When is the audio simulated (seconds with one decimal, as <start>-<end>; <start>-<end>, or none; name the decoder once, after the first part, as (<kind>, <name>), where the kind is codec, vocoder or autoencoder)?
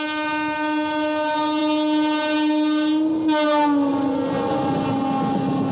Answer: none